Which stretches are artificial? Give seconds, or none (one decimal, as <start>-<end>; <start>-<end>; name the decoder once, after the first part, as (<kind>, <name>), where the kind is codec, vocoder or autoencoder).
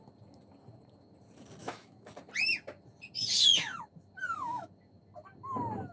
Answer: 1.6-2.1 (autoencoder, DAC-VAE)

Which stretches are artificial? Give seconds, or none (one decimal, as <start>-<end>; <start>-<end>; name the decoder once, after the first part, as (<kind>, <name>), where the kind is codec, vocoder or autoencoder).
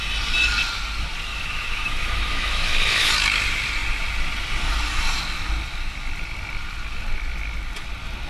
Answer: 1.3-3.1 (autoencoder, DAC-VAE)